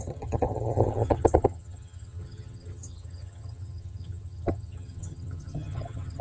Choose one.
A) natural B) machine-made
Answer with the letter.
B